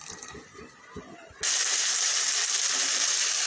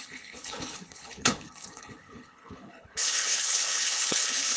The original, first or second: first